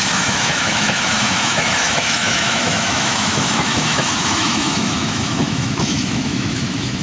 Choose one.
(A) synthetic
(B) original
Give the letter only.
A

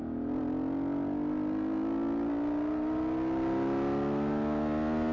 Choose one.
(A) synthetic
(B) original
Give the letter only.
B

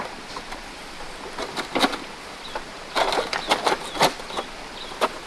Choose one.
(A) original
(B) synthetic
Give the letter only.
A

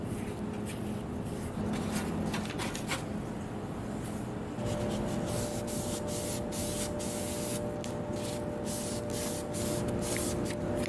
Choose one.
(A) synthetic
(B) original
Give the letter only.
B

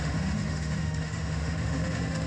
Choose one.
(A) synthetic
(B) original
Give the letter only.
A